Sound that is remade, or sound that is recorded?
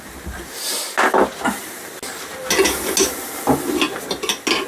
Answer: recorded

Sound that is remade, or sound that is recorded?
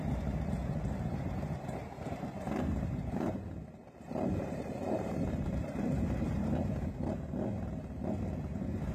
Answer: remade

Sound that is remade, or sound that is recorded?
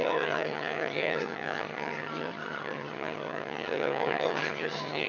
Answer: remade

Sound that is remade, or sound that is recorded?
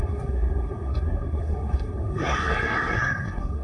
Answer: remade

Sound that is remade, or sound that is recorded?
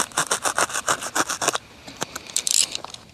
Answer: recorded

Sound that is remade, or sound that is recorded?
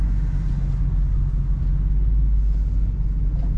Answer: recorded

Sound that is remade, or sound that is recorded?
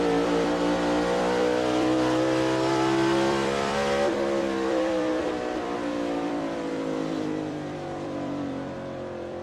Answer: remade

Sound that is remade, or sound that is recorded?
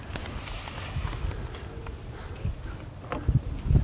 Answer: recorded